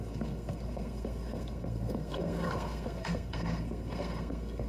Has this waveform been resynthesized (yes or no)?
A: yes